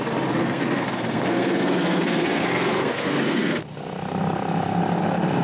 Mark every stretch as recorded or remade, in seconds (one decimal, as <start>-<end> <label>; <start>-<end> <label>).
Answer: 0.0-0.4 recorded; 0.4-3.6 remade; 3.6-5.4 recorded